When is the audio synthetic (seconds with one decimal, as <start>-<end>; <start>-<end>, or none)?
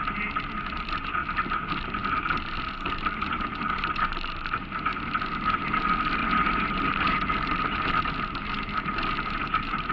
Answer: none